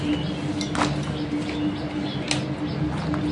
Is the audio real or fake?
real